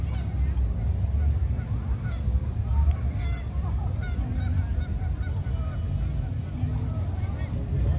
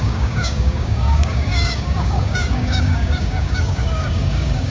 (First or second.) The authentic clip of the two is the first